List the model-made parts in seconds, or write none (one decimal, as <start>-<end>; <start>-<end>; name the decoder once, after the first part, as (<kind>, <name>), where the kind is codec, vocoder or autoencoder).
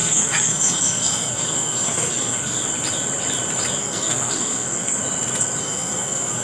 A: 0.0-2.6 (codec, SNAC); 3.8-5.0; 5.6-6.4